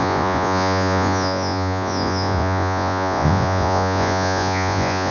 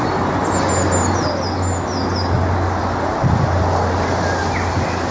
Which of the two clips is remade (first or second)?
first